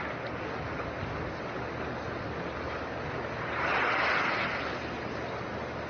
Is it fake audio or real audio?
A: real